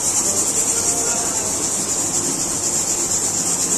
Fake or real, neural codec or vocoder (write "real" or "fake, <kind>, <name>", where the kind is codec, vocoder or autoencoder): real